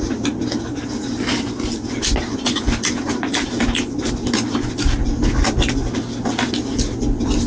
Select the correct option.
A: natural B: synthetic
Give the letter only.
A